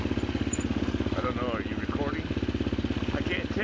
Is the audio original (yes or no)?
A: yes